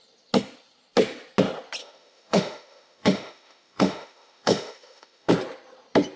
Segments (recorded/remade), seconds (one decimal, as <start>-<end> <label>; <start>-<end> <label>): 0.0-1.8 recorded; 1.8-5.3 remade; 5.3-6.2 recorded